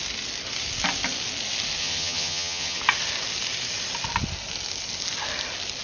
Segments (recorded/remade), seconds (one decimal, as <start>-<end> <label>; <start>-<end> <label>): 0.0-1.8 recorded; 1.8-2.8 remade; 2.8-5.8 recorded